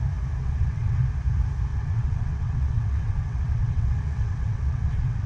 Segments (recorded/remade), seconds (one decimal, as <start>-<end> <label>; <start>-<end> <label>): 0.0-0.4 recorded; 0.4-1.0 remade; 1.0-1.7 recorded; 1.7-5.3 remade

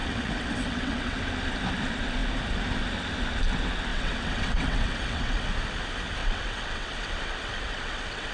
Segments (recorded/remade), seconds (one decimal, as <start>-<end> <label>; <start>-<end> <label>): 0.0-1.2 remade; 1.2-3.9 recorded; 3.9-5.4 remade; 5.4-6.2 recorded; 6.2-8.3 remade

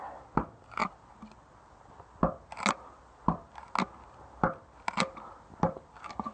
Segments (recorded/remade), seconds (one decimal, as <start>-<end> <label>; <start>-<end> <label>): 0.0-6.3 recorded

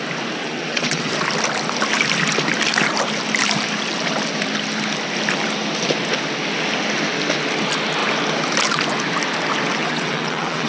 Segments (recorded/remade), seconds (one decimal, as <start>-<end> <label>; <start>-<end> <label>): 0.0-0.4 recorded; 0.4-1.1 remade; 1.1-9.8 recorded; 9.8-10.7 remade

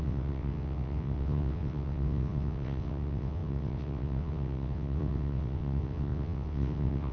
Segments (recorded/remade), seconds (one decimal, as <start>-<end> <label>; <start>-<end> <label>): 0.0-7.1 remade

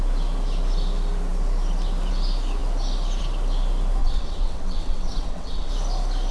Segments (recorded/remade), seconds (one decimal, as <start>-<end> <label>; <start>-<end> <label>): 0.0-4.0 recorded; 4.0-5.7 remade; 5.7-6.3 recorded

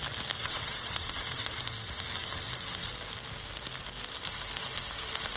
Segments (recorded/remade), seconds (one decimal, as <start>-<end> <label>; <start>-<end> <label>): 0.0-0.4 recorded; 0.4-1.6 remade; 1.6-5.4 recorded

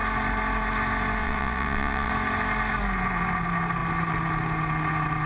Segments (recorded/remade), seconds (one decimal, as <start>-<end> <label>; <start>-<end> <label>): 0.0-1.2 recorded; 1.2-2.1 remade; 2.1-5.3 recorded